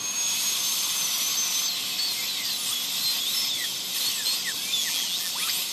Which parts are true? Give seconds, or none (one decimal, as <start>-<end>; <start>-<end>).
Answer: 0.0-4.8; 5.3-5.7

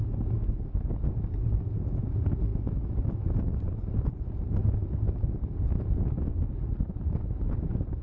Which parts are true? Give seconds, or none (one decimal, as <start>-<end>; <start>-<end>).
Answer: 0.0-2.5; 3.1-8.0